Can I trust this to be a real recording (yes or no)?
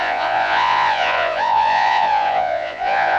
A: no